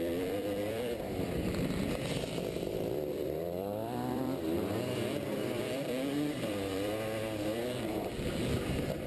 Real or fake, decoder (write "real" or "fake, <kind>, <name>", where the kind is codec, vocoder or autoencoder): fake, vocoder, BigVGAN v2